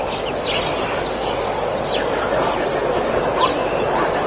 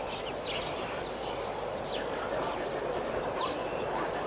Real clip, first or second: first